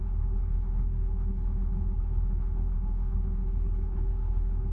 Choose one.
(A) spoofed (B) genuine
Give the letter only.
A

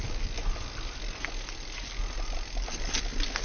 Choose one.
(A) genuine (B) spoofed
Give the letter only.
A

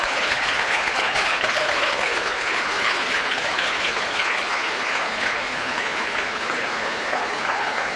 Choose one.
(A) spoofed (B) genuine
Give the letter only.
A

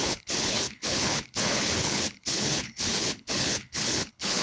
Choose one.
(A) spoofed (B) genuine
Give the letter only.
A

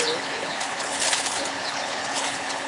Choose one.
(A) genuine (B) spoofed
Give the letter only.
B